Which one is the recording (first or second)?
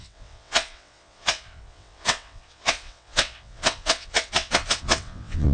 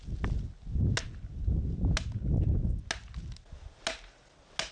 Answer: second